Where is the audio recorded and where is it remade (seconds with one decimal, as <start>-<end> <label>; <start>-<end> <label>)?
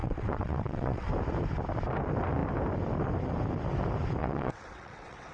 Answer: 0.0-1.1 remade; 1.1-4.2 recorded; 4.2-5.3 remade